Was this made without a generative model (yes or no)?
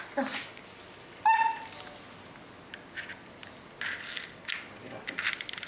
yes